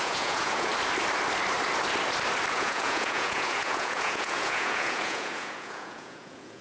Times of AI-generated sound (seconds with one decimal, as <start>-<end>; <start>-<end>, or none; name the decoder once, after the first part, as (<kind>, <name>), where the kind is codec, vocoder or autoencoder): 0.0-0.7 (vocoder, Vocos); 2.5-6.6